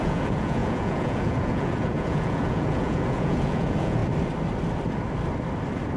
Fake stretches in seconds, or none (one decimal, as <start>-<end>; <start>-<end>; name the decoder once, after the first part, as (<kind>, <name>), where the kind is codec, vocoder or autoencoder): 0.0-4.0 (vocoder, Vocos)